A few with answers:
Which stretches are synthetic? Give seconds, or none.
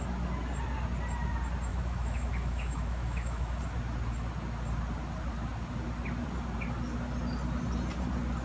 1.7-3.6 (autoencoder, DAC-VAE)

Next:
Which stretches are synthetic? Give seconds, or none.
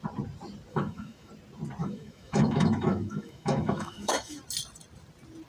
0.7-1.3 (autoencoder, DAC-VAE); 1.8-4.4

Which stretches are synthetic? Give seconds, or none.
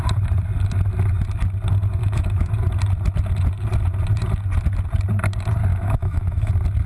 2.0-2.5 (autoencoder, DAC-VAE); 5.7-6.5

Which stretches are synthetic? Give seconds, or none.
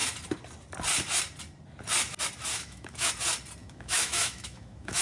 2.5-3.1 (autoencoder, DAC-VAE); 3.6-5.0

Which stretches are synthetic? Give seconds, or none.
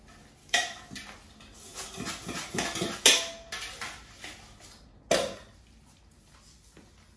0.4-0.9 (autoencoder, DAC-VAE)